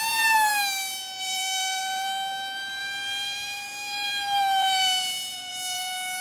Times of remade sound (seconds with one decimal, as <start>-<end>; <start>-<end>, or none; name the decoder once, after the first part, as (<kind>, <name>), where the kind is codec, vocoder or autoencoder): 0.0-0.5 (vocoder, BigVGAN v2); 1.2-6.2